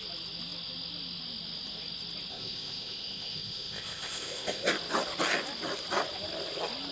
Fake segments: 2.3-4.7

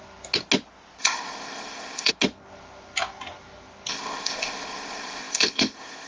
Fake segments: 1.0-2.1; 3.9-6.1